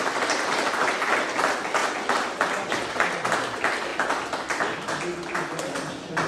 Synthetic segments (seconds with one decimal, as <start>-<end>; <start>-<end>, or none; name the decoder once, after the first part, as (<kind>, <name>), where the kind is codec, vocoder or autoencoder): none